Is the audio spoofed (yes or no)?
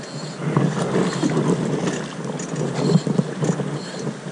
no